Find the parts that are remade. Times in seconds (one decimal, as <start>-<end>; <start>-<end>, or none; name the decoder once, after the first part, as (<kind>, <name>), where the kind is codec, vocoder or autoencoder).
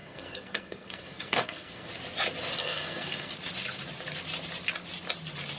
0.0-1.9 (codec, SNAC); 2.6-3.3